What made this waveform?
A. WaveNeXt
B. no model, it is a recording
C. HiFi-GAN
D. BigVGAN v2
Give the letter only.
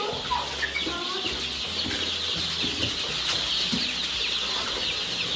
B